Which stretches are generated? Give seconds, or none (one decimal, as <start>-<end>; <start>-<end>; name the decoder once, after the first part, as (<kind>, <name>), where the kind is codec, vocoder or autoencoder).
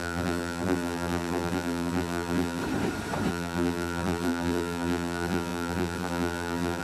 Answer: 0.0-2.6 (vocoder, BigVGAN v2); 3.3-6.8